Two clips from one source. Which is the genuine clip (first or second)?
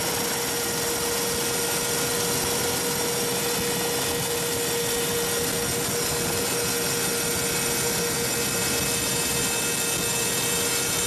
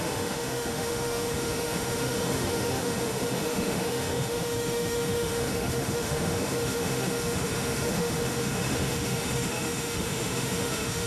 first